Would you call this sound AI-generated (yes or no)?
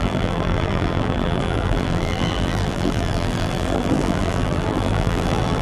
yes